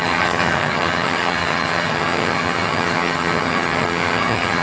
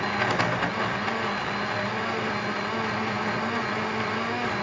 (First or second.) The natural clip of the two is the second